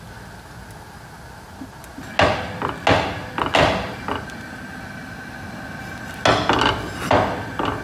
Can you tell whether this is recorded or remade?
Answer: recorded